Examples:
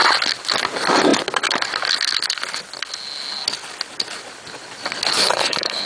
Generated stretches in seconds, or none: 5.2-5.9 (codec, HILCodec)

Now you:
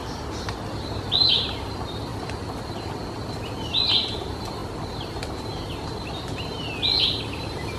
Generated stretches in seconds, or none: none

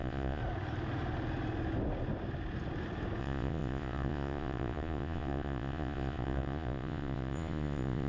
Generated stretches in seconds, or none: 0.0-0.4 (vocoder, Vocos); 3.2-8.1

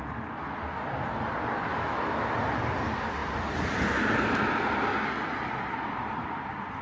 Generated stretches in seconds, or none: 1.7-2.3 (autoencoder, DAC-VAE)

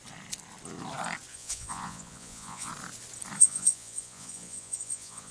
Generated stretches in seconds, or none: 1.3-2.7 (vocoder, Vocos); 3.4-5.3